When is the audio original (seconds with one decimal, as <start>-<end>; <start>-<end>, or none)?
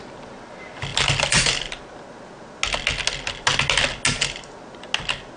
0.0-0.9; 1.8-5.4